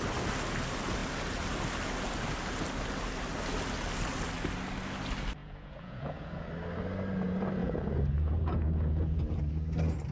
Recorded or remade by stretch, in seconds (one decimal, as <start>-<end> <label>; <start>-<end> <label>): 0.0-5.4 recorded; 5.4-6.5 remade; 6.5-7.6 recorded; 7.6-9.4 remade; 9.4-10.1 recorded